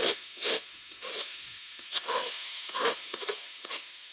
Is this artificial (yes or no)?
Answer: yes